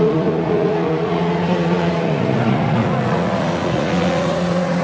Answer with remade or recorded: remade